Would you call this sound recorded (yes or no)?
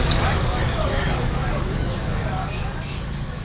no